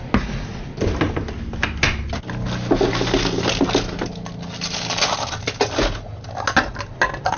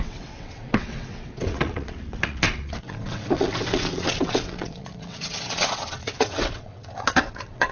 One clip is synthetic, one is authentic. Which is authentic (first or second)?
first